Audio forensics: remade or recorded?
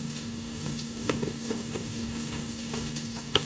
remade